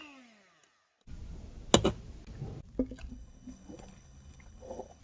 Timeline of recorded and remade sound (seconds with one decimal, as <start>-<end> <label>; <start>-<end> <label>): 0.0-3.1 recorded; 3.1-5.0 remade